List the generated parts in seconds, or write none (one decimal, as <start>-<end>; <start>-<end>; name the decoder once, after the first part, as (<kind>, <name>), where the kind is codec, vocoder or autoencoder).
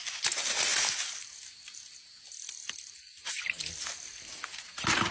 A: none